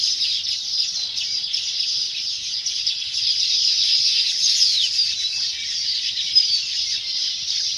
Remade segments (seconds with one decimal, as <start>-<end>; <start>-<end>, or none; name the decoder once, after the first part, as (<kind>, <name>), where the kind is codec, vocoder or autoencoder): 0.0-2.4 (vocoder, BigVGAN v2); 3.5-7.8